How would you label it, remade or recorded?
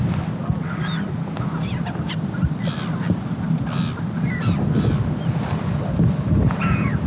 recorded